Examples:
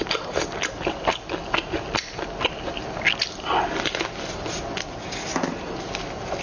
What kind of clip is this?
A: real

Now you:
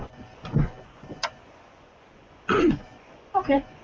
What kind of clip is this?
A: fake